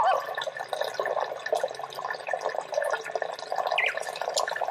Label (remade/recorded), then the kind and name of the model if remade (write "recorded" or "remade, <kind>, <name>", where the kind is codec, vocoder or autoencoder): recorded